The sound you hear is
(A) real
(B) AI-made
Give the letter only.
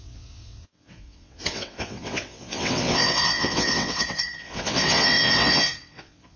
B